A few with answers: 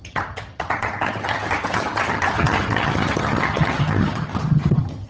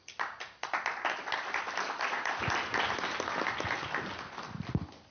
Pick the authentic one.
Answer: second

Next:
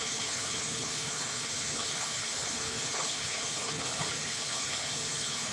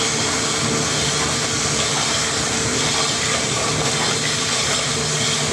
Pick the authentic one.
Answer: second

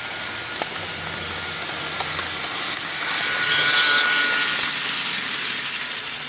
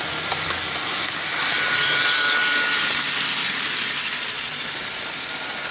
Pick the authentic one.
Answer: first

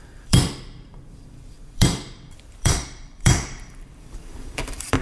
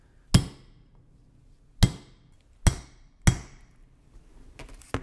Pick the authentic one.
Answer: second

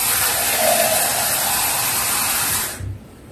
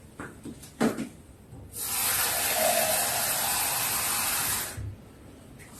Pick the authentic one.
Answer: second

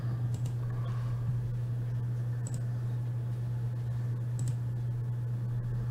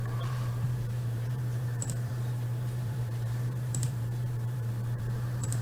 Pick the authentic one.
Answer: first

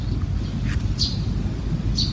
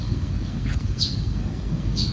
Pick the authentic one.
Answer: first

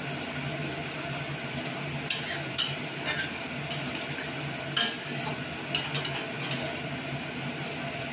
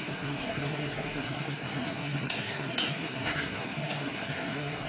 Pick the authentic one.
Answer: first